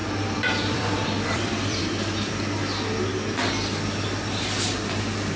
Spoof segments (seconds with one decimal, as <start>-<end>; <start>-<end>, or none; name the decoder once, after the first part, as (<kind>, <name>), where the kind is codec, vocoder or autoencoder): 0.0-1.8 (vocoder, BigVGAN v2)